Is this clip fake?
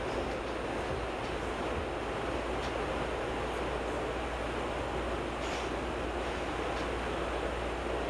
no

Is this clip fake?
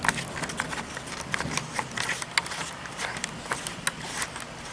no